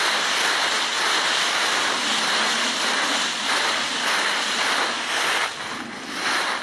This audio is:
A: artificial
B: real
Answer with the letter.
B